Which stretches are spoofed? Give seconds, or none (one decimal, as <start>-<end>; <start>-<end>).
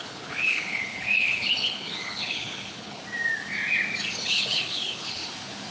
0.0-3.0; 4.2-5.2